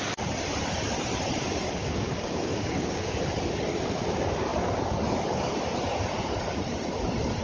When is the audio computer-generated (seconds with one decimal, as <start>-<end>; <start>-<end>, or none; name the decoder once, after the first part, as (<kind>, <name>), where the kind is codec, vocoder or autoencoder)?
1.8-3.2 (codec, DAC)